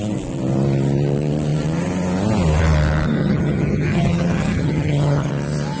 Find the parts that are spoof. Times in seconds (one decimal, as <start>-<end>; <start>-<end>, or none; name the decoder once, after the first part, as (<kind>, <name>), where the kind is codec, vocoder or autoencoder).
3.2-5.3 (vocoder, HiFi-GAN)